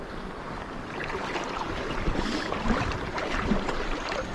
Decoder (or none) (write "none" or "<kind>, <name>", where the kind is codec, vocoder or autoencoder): vocoder, BigVGAN v2